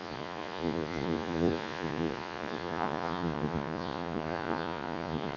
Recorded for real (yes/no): no